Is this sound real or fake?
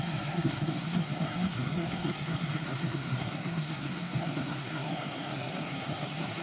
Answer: fake